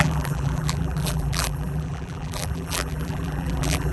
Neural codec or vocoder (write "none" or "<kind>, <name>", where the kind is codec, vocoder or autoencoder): vocoder, BigVGAN v2